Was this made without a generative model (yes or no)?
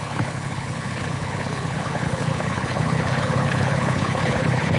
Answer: no